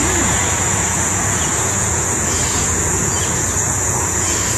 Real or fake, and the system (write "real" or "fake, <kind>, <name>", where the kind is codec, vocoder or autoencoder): fake, vocoder, Vocos